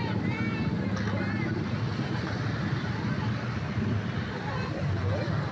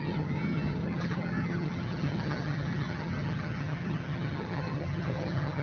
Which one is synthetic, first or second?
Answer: second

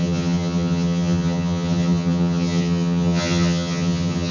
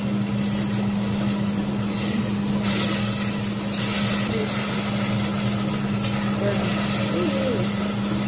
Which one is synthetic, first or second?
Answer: first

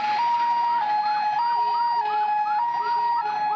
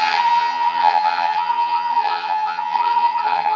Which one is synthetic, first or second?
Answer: second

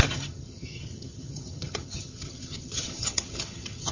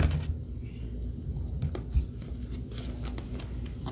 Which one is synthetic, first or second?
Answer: first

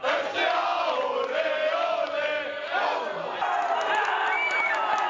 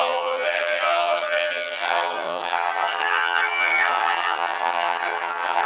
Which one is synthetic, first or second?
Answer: second